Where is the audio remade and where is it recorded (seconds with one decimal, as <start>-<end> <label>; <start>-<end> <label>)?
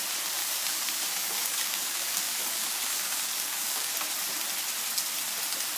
0.0-0.4 recorded; 0.4-3.9 remade; 3.9-5.8 recorded